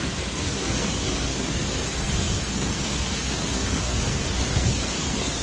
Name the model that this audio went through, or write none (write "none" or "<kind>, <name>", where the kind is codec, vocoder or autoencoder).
codec, SNAC